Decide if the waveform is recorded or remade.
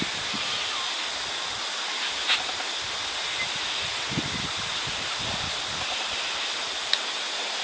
recorded